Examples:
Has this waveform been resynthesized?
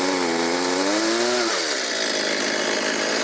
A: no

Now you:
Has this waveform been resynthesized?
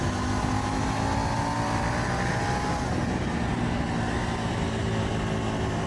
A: no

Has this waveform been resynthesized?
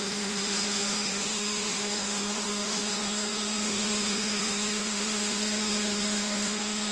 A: yes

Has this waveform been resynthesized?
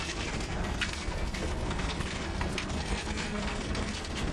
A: yes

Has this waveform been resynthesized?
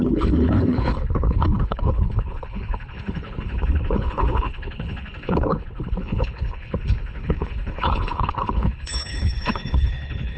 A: yes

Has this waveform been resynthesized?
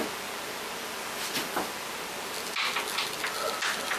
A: no